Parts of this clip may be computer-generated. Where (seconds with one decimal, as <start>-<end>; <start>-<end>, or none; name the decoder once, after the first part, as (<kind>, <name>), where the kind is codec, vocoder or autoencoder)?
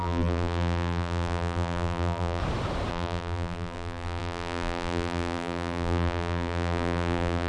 0.0-2.4 (vocoder, BigVGAN v2); 2.9-7.5